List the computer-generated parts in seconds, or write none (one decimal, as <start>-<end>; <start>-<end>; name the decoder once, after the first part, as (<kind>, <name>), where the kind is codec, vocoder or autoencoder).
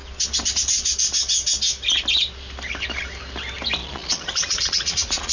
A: 3.8-5.3 (vocoder, Vocos)